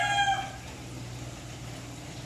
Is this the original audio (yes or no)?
yes